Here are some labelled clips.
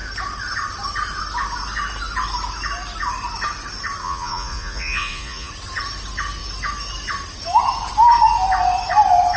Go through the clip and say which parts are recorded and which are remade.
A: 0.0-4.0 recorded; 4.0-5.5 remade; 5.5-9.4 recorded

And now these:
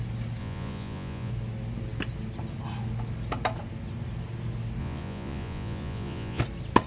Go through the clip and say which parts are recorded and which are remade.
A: 0.0-0.4 recorded; 0.4-1.3 remade; 1.3-4.8 recorded; 4.8-6.4 remade; 6.4-6.9 recorded

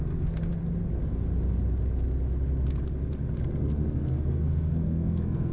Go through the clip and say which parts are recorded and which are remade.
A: 0.0-0.6 remade; 0.6-3.4 recorded; 3.4-5.5 remade

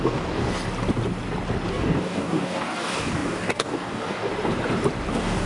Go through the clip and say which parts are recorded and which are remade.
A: 0.0-0.4 remade; 0.4-1.7 recorded; 1.7-4.3 remade; 4.3-5.1 recorded; 5.1-5.5 remade

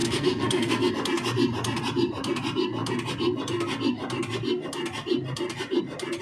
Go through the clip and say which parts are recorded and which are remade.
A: 0.0-0.9 remade; 0.9-6.2 recorded

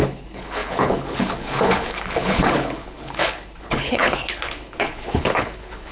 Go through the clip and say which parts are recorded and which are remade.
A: 0.0-5.9 remade

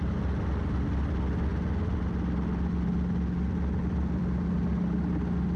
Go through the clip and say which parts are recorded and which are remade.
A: 0.0-5.6 recorded

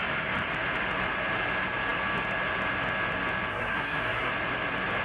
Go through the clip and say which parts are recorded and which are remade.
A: 0.0-3.5 recorded; 3.5-4.3 remade; 4.3-5.0 recorded